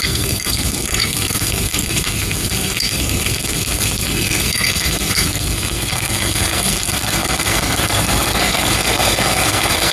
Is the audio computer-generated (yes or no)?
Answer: yes